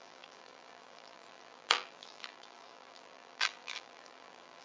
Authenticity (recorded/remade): remade